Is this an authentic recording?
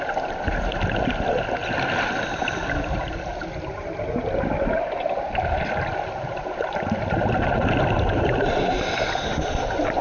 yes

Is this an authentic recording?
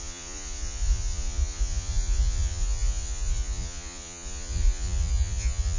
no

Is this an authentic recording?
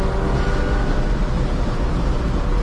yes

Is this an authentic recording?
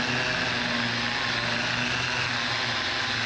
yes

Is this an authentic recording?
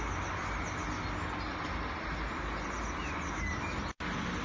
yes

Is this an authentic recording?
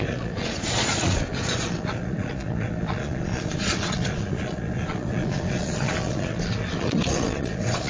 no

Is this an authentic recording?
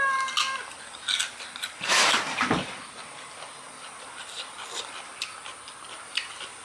yes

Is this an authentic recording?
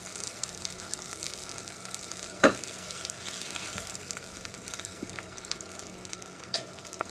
no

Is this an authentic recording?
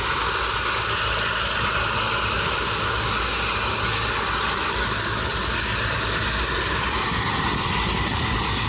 yes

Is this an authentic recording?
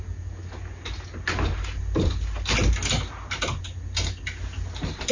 yes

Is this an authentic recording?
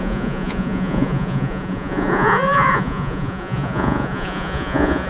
no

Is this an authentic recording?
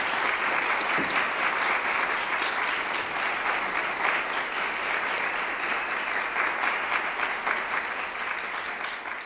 yes